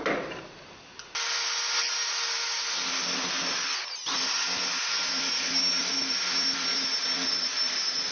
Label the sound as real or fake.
real